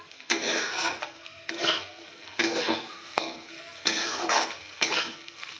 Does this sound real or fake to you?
fake